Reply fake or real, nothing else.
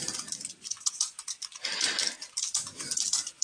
fake